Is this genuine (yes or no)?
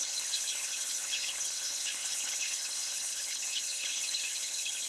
no